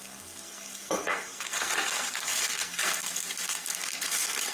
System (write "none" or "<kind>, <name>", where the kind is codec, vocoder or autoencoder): codec, SNAC